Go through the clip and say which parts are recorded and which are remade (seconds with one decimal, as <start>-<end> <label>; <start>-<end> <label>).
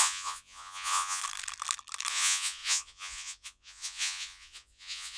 0.0-1.2 remade; 1.2-2.1 recorded; 2.1-5.2 remade